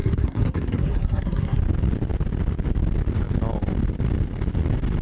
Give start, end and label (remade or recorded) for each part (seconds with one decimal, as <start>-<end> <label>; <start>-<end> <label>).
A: 0.0-1.6 remade; 1.6-5.0 recorded